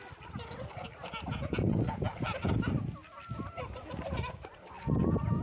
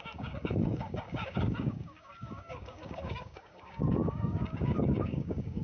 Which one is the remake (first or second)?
second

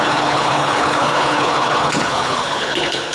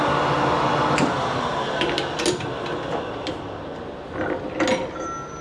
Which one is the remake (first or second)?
first